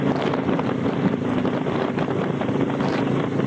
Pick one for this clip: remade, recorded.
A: remade